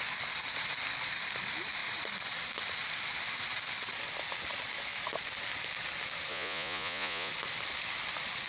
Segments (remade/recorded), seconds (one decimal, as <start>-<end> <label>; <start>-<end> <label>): 0.0-6.3 recorded; 6.3-7.3 remade; 7.3-8.5 recorded